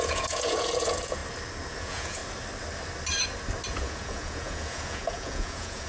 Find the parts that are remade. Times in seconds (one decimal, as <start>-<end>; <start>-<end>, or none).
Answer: 0.0-1.2; 1.8-2.2; 3.7-5.9